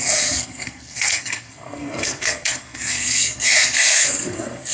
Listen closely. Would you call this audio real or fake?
fake